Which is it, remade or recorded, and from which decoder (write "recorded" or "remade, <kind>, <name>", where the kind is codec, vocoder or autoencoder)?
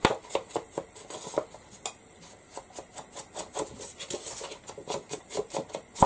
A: recorded